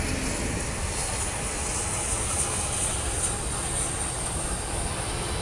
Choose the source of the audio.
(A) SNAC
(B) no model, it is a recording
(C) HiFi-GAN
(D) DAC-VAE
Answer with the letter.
B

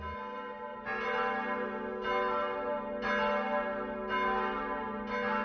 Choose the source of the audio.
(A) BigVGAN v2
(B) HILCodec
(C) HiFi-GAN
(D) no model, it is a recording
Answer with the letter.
D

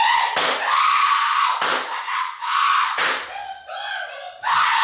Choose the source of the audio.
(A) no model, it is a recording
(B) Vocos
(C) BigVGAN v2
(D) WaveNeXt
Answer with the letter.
A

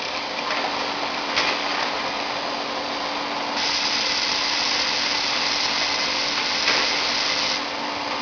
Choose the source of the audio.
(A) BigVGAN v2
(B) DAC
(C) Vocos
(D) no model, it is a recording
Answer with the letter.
D